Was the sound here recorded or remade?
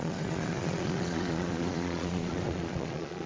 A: remade